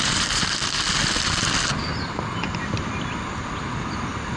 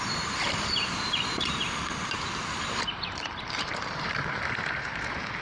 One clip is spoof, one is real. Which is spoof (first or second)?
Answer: second